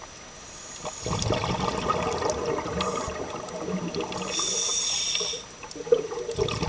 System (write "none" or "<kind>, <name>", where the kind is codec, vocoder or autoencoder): none